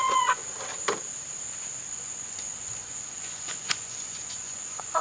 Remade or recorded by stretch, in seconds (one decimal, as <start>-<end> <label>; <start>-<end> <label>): 0.0-0.4 remade; 0.4-1.9 recorded; 1.9-5.0 remade